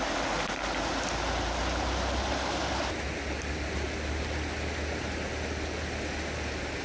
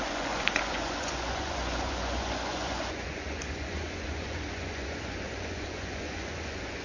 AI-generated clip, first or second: second